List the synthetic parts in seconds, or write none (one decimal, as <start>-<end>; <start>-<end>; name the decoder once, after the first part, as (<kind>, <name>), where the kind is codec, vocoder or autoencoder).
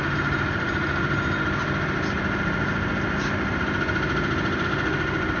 none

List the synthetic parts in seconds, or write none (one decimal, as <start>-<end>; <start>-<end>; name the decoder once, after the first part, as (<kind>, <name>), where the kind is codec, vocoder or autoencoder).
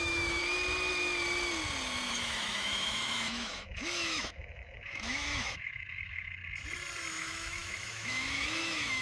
0.0-0.4 (autoencoder, DAC-VAE); 2.1-6.4; 7.1-9.0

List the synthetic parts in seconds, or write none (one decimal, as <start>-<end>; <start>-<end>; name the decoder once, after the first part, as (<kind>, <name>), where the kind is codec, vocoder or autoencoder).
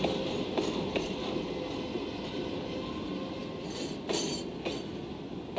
none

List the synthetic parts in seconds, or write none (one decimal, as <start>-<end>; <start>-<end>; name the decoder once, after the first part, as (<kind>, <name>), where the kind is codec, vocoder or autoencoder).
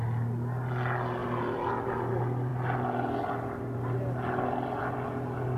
none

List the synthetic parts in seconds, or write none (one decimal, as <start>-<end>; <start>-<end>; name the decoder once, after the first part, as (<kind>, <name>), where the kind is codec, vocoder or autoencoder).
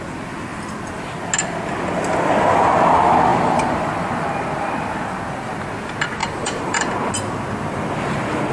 3.3-4.1 (vocoder, BigVGAN v2); 6.2-6.9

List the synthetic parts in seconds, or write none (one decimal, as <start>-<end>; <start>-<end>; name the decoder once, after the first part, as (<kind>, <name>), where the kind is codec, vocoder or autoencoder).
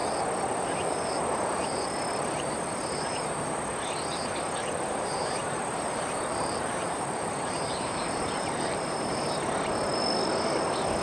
4.9-8.9 (vocoder, BigVGAN v2)